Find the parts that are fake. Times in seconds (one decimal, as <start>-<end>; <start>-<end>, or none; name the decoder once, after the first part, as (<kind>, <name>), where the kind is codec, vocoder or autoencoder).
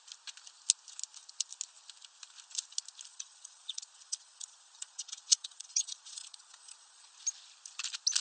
3.1-7.1 (vocoder, Vocos)